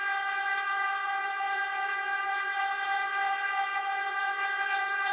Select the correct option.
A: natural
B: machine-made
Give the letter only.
B